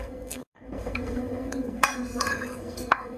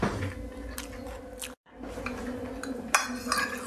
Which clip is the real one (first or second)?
second